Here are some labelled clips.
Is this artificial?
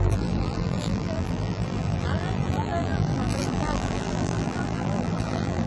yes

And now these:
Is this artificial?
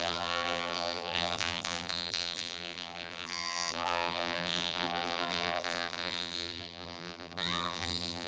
yes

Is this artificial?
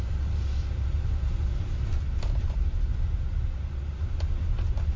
yes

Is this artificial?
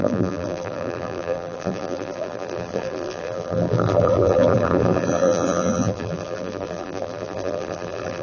yes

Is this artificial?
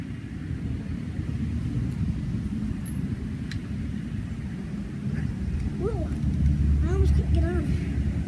no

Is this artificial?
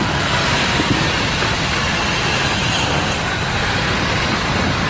no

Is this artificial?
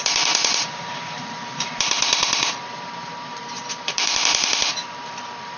yes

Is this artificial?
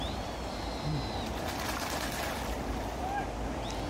no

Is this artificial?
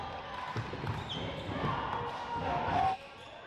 no